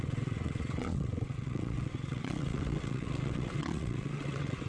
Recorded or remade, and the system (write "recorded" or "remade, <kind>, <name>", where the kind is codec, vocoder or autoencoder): remade, vocoder, WaveNeXt